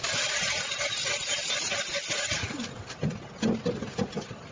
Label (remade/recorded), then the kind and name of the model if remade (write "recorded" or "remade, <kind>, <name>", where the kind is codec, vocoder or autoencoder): recorded